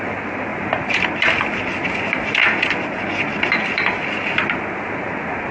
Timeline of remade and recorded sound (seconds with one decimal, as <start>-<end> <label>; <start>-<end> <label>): 0.0-0.5 recorded; 0.5-1.0 remade; 1.0-5.5 recorded

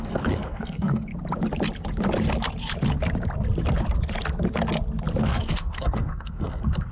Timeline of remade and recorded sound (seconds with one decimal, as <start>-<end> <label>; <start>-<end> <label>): 0.0-1.1 remade; 1.1-5.2 recorded; 5.2-6.9 remade

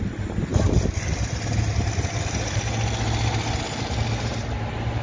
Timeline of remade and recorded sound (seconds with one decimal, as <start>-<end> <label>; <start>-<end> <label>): 0.0-5.0 recorded

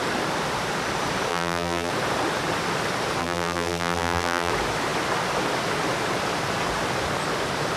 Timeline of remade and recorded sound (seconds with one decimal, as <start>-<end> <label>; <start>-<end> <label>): 0.0-1.3 recorded; 1.3-1.9 remade; 1.9-3.2 recorded; 3.2-4.5 remade; 4.5-7.8 recorded

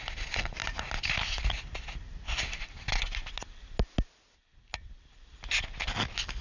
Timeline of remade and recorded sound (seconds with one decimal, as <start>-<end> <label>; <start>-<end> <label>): 0.0-6.4 recorded

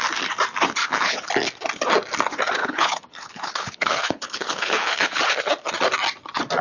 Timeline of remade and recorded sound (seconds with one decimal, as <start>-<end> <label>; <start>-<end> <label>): 0.0-0.8 recorded; 0.8-1.3 remade; 1.3-2.6 recorded; 2.6-5.2 remade; 5.2-6.6 recorded

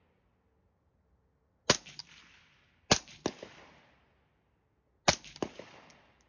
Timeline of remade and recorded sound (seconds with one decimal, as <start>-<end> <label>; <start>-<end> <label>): 0.0-6.3 recorded

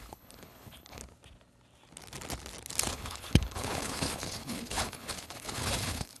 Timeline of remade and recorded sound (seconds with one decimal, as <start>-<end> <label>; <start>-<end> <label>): 0.0-1.0 remade; 1.0-2.9 recorded; 2.9-6.2 remade